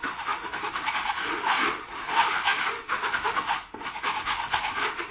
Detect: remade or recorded remade